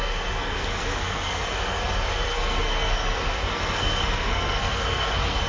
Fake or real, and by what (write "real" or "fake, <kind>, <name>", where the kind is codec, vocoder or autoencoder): fake, codec, SNAC